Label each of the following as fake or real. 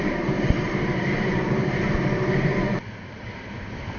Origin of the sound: fake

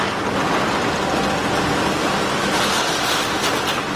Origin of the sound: real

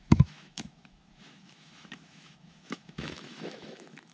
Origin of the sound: fake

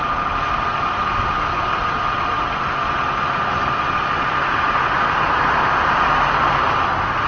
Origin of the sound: real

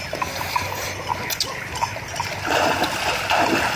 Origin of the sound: real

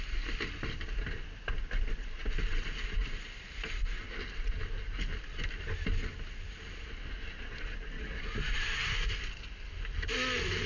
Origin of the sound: real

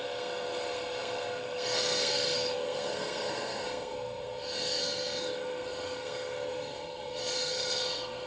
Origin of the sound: fake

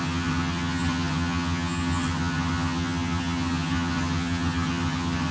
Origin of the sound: fake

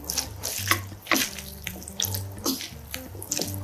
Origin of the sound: real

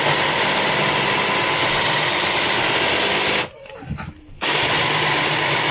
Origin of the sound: real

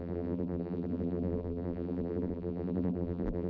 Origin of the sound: fake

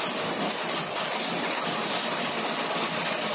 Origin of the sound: real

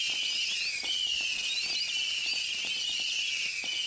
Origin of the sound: real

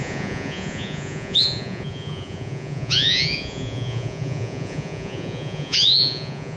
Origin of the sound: fake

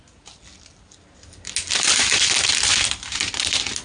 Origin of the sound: real